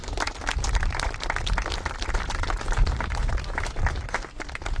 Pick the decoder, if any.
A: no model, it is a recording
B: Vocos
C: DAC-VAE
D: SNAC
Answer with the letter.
A